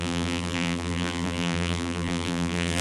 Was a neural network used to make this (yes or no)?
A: yes